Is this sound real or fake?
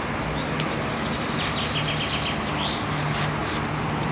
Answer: real